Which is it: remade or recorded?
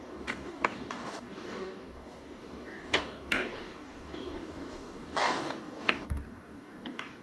remade